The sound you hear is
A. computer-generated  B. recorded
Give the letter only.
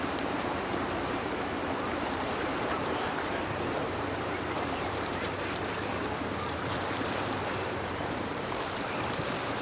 A